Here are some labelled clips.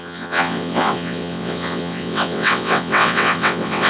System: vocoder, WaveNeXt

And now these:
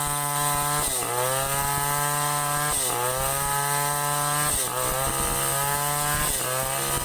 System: none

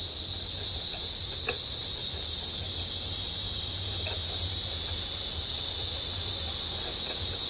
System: none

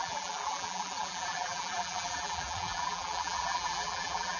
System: vocoder, BigVGAN v2